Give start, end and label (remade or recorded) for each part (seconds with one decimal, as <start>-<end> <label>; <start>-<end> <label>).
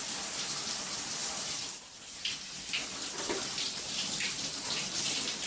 0.0-5.5 recorded